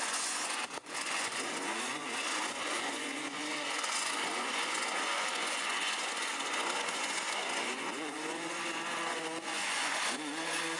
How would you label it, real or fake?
fake